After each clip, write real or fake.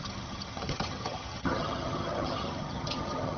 fake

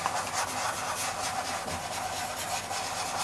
real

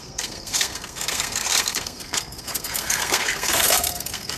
fake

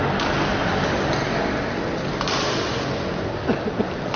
real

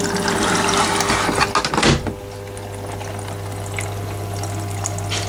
real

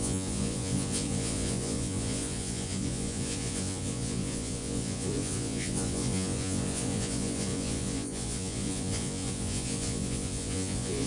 fake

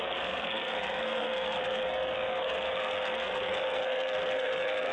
fake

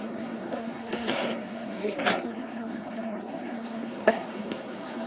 fake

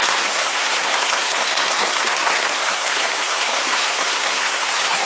fake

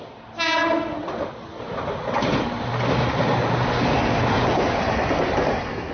real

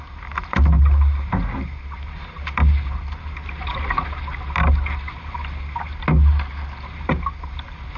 real